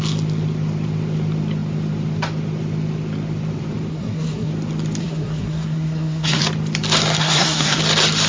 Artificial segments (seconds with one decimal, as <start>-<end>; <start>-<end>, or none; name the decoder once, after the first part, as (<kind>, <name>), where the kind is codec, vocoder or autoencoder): 3.9-4.5 (codec, SNAC); 5.0-6.4; 7.2-7.8